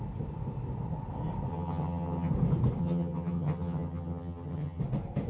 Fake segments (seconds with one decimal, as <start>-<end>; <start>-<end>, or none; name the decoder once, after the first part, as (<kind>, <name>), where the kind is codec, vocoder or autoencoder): 1.5-2.3 (vocoder, HiFi-GAN); 2.8-4.8